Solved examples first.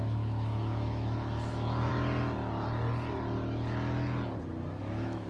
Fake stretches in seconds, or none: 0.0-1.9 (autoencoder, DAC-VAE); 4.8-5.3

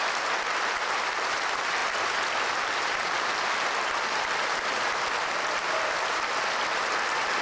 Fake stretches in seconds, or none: none